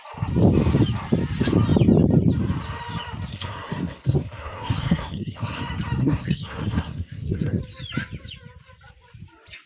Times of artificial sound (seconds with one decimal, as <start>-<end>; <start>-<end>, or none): 3.3-5.6; 6.0-7.6